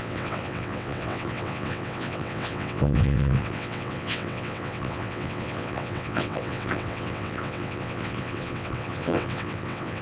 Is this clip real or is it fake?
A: fake